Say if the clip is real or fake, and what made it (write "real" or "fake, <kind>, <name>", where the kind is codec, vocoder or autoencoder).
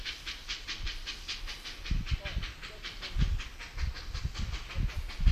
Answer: real